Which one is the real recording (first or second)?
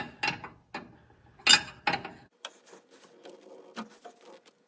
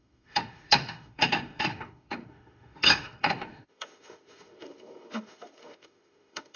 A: first